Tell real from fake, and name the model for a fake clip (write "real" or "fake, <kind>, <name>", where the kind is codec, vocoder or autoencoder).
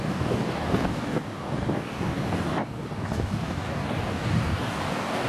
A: fake, codec, DAC